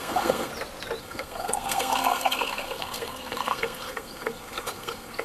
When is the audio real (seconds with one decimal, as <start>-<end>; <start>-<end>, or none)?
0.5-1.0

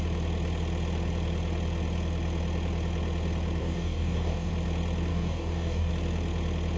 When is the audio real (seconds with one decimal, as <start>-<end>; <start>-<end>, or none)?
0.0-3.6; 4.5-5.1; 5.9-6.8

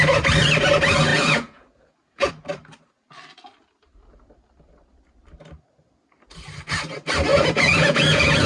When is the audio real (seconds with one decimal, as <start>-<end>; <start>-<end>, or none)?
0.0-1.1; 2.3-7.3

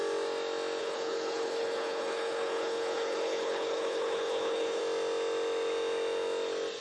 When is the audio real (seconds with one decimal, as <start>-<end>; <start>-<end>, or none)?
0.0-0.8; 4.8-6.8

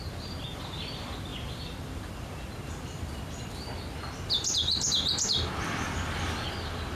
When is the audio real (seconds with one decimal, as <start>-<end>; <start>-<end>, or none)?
none

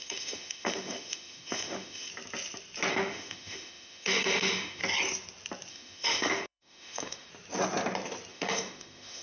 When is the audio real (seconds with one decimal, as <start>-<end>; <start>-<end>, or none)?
2.1-2.9; 4.8-5.7; 7.3-8.3

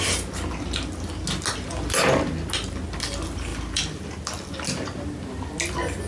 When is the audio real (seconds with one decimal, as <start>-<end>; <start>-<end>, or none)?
0.0-6.1

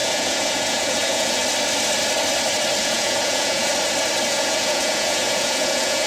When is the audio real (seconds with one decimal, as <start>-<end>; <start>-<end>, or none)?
1.4-2.8; 3.7-4.3